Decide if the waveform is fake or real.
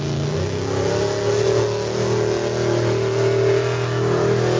real